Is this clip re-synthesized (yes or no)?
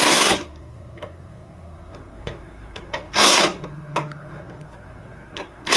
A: yes